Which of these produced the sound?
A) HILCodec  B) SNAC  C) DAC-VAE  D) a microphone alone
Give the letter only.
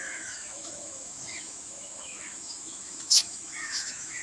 C